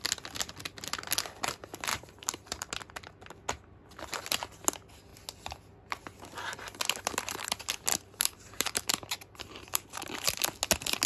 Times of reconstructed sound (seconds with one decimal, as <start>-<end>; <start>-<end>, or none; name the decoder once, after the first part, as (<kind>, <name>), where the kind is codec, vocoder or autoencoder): 1.9-2.7 (vocoder, BigVGAN v2); 7.9-10.0